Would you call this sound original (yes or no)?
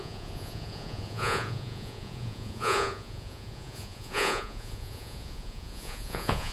no